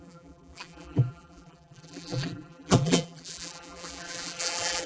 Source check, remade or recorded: remade